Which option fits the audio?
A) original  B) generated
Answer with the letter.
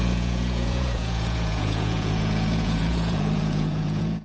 B